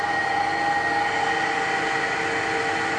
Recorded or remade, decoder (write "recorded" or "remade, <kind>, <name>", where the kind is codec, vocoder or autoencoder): recorded